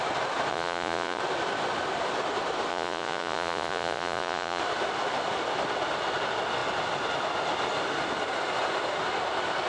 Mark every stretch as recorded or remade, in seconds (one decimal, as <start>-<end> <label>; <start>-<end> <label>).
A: 0.0-0.5 recorded; 0.5-1.2 remade; 1.2-2.7 recorded; 2.7-4.6 remade; 4.6-9.7 recorded